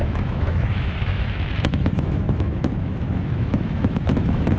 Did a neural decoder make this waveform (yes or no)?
yes